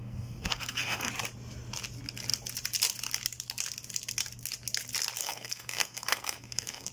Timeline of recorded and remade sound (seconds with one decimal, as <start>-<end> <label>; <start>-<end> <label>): 0.0-1.1 remade; 1.1-5.2 recorded; 5.2-6.9 remade